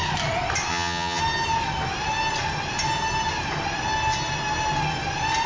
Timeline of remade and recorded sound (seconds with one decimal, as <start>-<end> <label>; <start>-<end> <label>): 0.0-0.7 recorded; 0.7-1.2 remade; 1.2-5.5 recorded